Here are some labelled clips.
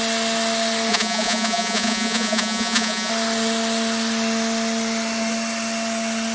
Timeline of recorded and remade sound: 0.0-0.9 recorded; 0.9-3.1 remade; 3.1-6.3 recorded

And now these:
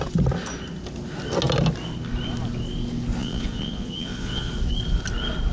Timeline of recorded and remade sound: 0.0-3.2 recorded; 3.2-4.5 remade; 4.5-5.5 recorded